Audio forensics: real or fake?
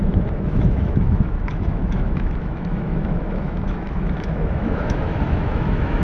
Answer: fake